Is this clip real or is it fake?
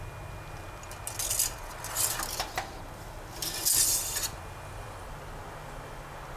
real